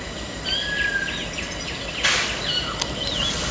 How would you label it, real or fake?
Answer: real